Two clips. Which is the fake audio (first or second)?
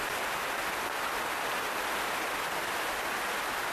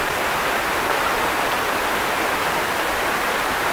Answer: second